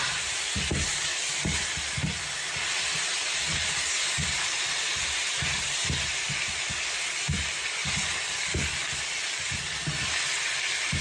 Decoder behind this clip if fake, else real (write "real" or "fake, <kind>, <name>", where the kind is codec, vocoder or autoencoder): real